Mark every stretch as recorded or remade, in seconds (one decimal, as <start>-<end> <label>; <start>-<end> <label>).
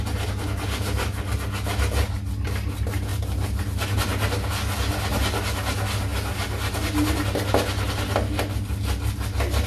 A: 0.0-3.1 recorded; 3.1-3.6 remade; 3.6-9.7 recorded